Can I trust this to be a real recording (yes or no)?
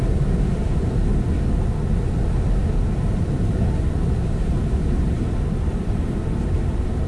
yes